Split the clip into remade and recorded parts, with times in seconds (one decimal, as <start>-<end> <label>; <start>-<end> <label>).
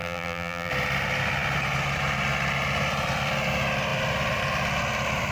0.0-0.7 remade; 0.7-5.3 recorded